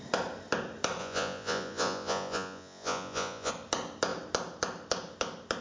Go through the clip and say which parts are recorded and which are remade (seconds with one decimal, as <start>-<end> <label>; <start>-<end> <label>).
0.0-1.0 recorded; 1.0-3.5 remade; 3.5-5.6 recorded